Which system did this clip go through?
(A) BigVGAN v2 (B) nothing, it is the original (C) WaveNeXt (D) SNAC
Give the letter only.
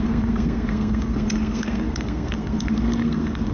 D